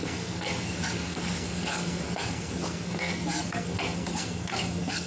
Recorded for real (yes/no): no